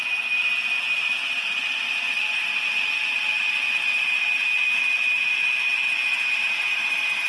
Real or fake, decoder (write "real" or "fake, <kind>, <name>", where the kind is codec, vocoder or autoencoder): real